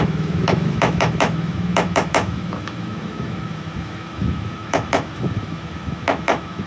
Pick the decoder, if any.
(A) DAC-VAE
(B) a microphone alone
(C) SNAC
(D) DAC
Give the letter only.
A